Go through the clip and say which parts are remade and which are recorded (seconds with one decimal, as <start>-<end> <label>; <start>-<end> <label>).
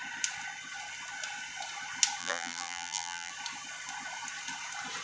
0.0-2.2 recorded; 2.2-3.3 remade; 3.3-5.0 recorded